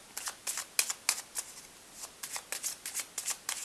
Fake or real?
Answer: real